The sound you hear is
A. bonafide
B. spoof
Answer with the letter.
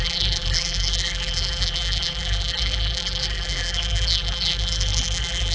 B